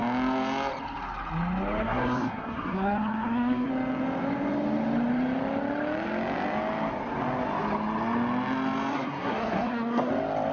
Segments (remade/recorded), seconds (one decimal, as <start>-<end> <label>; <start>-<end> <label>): 0.0-1.8 recorded; 1.8-3.7 remade; 3.7-8.9 recorded; 8.9-10.1 remade; 10.1-10.5 recorded